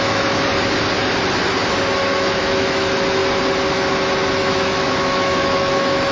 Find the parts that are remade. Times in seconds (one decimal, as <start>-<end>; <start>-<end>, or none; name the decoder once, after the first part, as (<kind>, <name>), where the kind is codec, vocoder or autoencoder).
0.0-0.5 (autoencoder, DAC-VAE); 2.1-3.2; 4.3-6.1